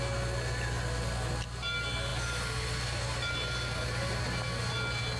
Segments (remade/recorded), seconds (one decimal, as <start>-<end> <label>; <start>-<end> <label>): 0.0-5.2 recorded